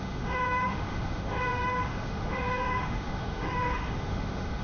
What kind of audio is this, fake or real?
fake